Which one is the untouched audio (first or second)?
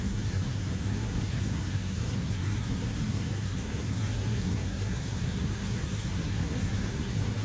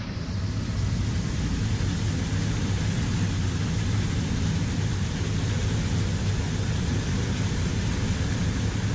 second